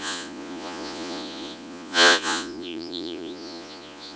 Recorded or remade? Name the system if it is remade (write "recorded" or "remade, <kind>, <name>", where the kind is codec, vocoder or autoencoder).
remade, vocoder, Vocos